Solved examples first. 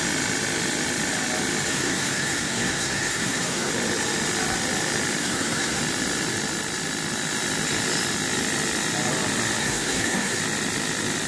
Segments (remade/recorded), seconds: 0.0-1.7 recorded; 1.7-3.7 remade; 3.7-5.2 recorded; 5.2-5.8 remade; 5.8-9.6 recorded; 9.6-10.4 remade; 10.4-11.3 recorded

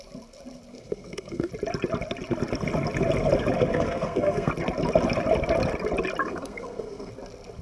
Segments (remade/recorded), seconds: 0.0-0.7 recorded; 0.7-1.5 remade; 1.5-3.7 recorded; 3.7-4.5 remade; 4.5-6.2 recorded; 6.2-7.1 remade; 7.1-7.6 recorded

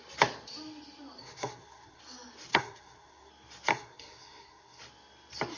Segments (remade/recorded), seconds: 0.0-1.2 recorded; 1.2-2.0 remade; 2.0-2.5 recorded; 2.5-3.3 remade; 3.3-3.7 recorded; 3.7-4.8 remade; 4.8-5.6 recorded

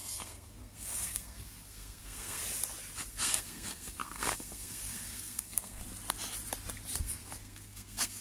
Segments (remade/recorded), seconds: 0.0-2.4 remade; 2.4-3.1 recorded; 3.1-5.8 remade; 5.8-7.0 recorded; 7.0-8.2 remade

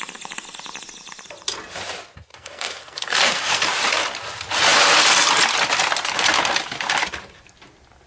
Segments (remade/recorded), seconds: 0.0-2.3 recorded; 2.3-3.7 remade; 3.7-8.1 recorded